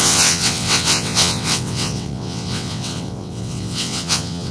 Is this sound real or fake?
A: fake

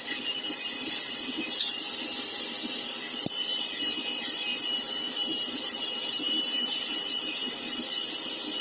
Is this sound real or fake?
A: real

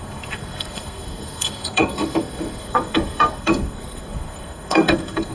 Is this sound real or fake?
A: fake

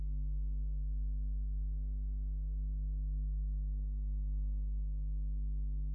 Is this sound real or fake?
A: fake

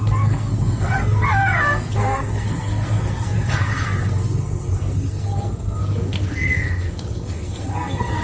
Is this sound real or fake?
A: fake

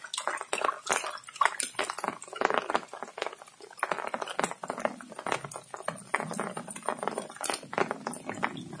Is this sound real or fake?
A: real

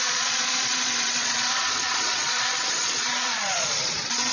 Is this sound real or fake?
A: fake